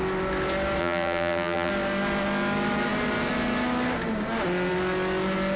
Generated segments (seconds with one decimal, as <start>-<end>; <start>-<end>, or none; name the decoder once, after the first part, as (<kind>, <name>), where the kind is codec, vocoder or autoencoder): 0.8-1.7 (vocoder, BigVGAN v2)